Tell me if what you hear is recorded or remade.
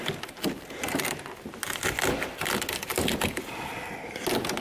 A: recorded